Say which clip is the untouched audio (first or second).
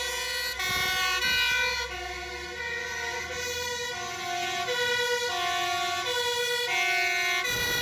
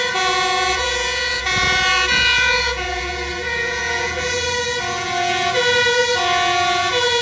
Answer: first